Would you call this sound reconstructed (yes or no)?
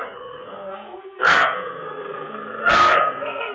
yes